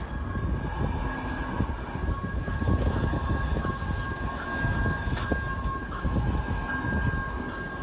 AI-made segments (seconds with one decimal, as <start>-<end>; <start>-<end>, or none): 2.4-6.7

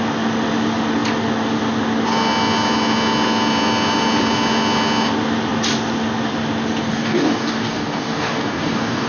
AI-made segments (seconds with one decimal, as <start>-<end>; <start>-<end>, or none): 6.9-9.1